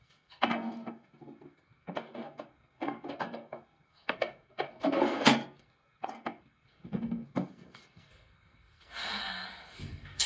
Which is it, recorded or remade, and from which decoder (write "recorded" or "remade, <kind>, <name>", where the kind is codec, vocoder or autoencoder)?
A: remade, codec, SNAC